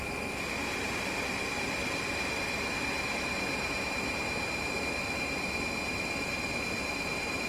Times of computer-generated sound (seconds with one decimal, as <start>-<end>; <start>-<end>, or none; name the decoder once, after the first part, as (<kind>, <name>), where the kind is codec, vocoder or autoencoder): none